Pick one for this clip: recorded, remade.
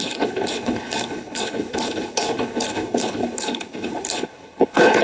remade